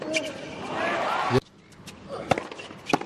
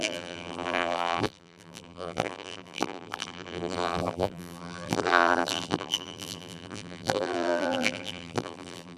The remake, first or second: second